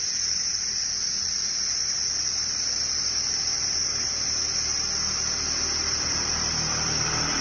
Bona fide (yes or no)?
no